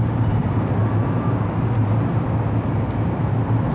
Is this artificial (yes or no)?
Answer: no